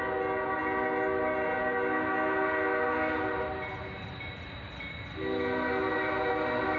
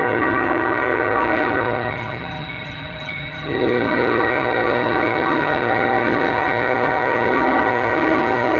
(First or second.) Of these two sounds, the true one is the first